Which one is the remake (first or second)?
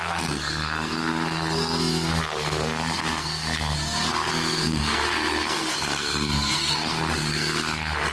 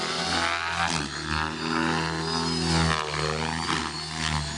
first